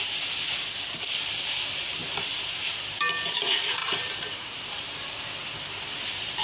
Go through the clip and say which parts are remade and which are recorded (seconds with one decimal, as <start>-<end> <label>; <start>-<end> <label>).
0.0-2.0 recorded; 2.0-2.6 remade; 2.6-3.8 recorded; 3.8-4.9 remade; 4.9-6.4 recorded